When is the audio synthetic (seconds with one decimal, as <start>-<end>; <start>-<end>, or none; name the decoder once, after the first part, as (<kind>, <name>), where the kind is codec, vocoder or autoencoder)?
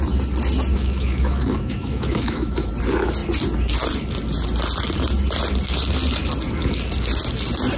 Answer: 0.7-2.7 (autoencoder, DAC-VAE)